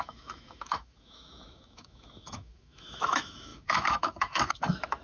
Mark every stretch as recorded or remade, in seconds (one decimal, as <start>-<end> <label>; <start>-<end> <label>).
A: 0.0-5.0 remade